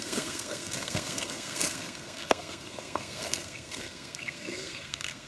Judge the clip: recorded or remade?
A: remade